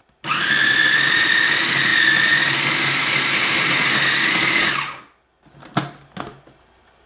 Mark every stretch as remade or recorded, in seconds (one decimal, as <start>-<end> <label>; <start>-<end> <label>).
0.0-1.9 remade; 1.9-6.2 recorded; 6.2-7.1 remade

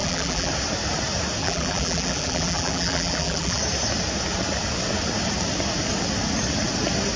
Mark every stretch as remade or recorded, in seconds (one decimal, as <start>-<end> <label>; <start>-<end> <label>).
0.0-0.5 remade; 0.5-1.4 recorded; 1.4-3.6 remade; 3.6-7.2 recorded

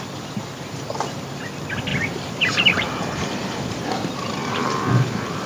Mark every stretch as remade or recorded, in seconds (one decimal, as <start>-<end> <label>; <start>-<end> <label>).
0.0-1.9 recorded; 1.9-3.9 remade; 3.9-4.4 recorded; 4.4-5.5 remade

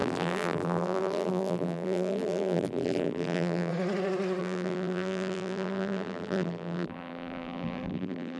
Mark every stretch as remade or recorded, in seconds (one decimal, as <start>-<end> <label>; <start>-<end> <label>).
0.0-3.7 remade; 3.7-4.4 recorded; 4.4-8.4 remade

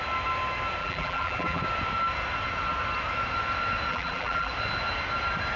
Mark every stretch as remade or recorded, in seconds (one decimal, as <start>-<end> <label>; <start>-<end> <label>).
0.0-0.8 recorded; 0.8-1.6 remade; 1.6-3.9 recorded; 3.9-4.5 remade; 4.5-5.6 recorded

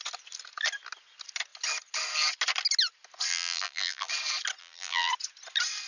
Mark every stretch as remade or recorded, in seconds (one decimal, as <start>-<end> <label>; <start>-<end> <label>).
0.0-3.3 recorded; 3.3-4.1 remade; 4.1-4.6 recorded; 4.6-5.1 remade; 5.1-5.9 recorded

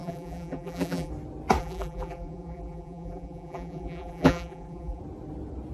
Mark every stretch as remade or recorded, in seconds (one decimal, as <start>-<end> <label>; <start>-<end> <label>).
0.0-1.1 remade; 1.1-1.6 recorded; 1.6-5.0 remade; 5.0-5.7 recorded